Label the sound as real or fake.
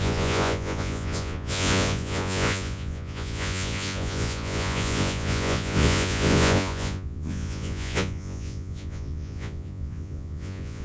fake